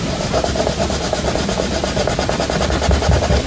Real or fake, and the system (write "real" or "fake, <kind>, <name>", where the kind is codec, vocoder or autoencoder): real